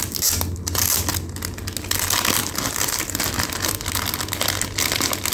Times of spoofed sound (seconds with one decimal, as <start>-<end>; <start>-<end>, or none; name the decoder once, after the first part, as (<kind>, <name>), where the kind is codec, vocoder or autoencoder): 2.4-3.3 (vocoder, BigVGAN v2)

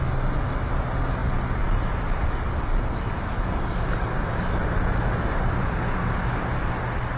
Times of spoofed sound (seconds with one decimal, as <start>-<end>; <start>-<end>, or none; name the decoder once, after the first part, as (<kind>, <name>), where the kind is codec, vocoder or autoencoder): none

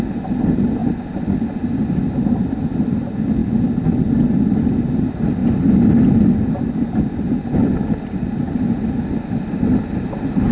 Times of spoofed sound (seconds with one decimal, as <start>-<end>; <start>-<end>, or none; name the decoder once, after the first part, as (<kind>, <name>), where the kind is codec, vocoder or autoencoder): none